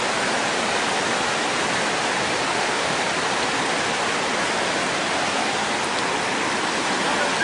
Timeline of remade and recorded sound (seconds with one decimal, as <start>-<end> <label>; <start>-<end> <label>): 0.0-2.5 recorded; 2.5-3.0 remade; 3.0-7.4 recorded